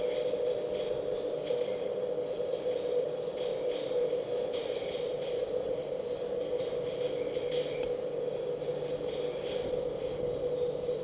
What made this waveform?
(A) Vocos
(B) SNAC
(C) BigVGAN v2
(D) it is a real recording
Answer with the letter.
D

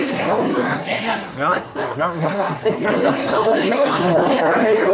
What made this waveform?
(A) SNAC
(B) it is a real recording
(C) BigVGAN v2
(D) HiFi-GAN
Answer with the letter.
A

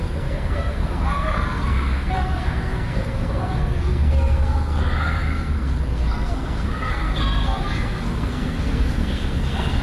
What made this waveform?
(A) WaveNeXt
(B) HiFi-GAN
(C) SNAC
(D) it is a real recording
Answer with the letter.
C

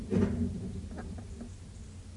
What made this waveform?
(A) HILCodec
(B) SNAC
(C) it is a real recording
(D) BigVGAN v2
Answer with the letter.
C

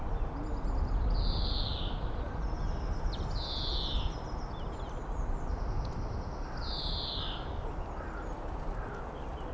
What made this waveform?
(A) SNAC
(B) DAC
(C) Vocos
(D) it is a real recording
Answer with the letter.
D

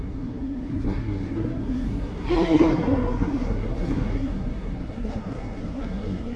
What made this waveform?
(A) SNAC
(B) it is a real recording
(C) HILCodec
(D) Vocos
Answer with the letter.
A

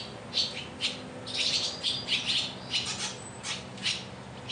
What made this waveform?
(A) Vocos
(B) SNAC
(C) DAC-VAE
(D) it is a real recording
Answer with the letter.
D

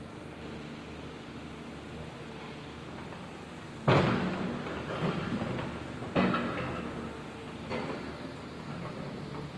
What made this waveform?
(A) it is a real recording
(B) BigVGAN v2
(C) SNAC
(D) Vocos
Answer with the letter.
A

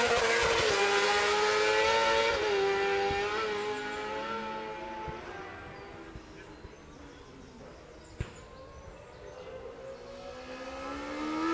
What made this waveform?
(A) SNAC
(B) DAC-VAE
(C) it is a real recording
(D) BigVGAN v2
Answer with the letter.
C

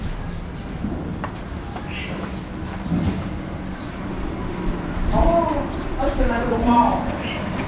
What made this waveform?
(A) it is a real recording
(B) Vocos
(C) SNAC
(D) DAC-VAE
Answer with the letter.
A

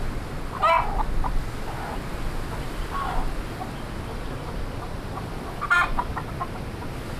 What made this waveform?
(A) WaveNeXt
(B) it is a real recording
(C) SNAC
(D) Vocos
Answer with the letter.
B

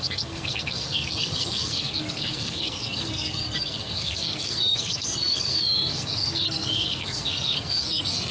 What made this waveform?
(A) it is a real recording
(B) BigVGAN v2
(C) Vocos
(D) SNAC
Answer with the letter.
D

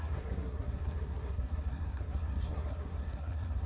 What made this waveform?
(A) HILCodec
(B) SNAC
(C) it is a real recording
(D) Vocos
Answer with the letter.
B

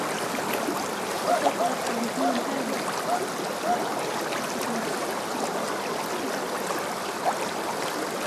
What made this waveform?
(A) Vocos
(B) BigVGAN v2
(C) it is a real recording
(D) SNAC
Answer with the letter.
C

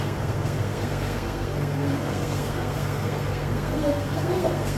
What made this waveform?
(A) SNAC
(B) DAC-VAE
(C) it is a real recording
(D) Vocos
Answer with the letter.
A